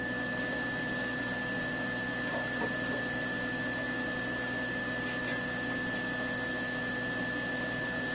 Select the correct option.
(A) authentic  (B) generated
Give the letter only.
A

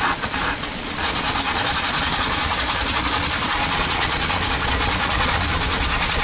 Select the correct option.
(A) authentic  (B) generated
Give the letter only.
B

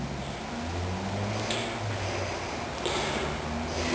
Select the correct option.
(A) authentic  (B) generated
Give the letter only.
A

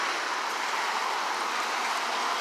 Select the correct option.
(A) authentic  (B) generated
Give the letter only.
A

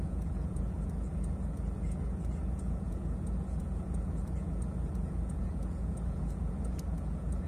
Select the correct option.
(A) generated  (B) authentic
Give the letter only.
A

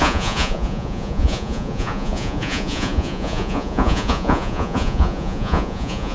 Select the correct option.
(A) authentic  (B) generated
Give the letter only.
B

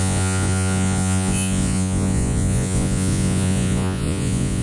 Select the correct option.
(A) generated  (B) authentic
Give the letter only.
A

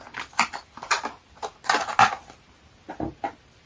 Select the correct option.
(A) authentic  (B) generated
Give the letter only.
A